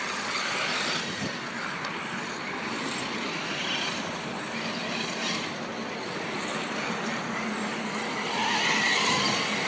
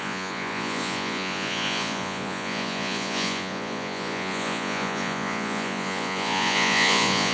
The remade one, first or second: second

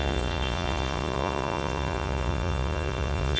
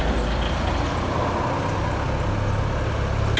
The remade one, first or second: first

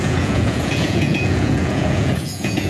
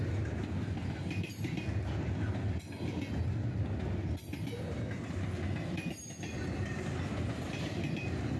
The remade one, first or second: first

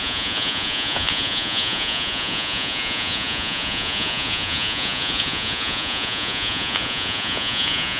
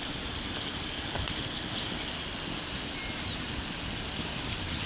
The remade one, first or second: first